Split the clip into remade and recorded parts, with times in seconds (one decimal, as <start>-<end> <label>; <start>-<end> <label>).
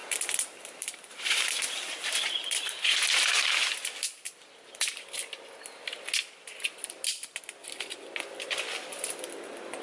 0.0-1.5 remade; 1.5-9.8 recorded